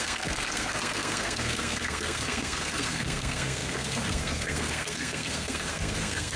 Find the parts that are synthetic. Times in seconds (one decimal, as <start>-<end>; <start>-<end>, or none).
0.0-6.4